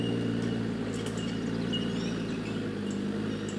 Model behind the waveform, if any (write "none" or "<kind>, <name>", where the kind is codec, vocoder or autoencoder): none